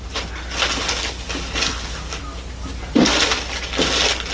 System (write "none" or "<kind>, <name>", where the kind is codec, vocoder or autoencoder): none